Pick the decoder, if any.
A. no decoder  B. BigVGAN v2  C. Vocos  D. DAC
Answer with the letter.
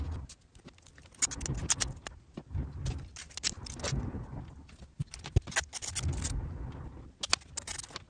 A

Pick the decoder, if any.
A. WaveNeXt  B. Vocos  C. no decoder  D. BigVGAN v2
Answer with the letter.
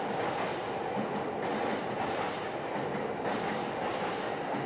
C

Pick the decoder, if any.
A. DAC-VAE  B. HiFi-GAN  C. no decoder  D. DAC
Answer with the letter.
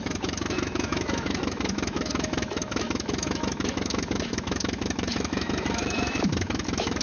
A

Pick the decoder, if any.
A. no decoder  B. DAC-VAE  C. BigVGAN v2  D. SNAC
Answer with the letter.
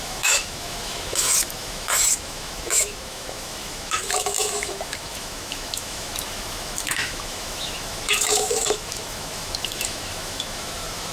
B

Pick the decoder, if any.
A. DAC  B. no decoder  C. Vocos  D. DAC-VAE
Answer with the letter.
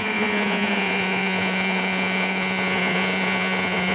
C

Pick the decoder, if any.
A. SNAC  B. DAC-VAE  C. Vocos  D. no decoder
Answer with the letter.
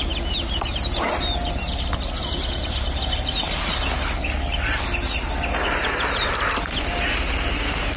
D